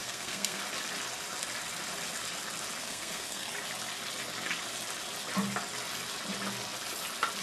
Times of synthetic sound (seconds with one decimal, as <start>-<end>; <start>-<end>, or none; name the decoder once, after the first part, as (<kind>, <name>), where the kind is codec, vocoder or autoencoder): 0.0-0.6 (codec, SNAC); 2.8-3.5